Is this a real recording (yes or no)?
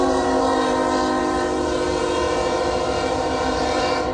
no